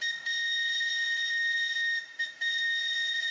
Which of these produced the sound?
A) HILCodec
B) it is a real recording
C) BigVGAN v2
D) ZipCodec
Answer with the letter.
B